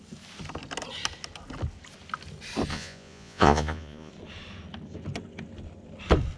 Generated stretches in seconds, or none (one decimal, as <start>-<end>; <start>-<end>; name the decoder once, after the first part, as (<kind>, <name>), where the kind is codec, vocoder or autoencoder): 2.7-4.1 (vocoder, Vocos)